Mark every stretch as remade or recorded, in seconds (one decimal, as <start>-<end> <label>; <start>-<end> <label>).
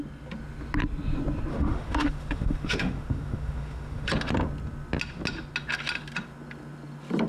0.0-1.5 recorded; 1.5-4.1 remade; 4.1-7.3 recorded